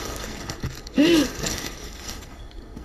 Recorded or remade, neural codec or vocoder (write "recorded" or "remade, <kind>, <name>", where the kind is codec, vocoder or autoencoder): remade, codec, SNAC